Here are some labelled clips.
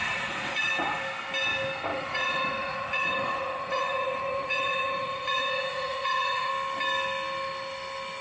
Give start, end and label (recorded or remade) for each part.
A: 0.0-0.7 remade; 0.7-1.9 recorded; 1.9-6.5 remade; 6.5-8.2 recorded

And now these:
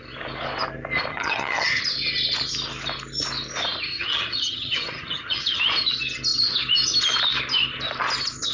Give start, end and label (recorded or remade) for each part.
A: 0.0-1.1 recorded; 1.1-1.8 remade; 1.8-3.9 recorded; 3.9-5.6 remade; 5.6-8.5 recorded

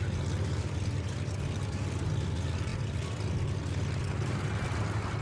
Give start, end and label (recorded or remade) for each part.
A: 0.0-2.7 remade; 2.7-4.0 recorded; 4.0-5.2 remade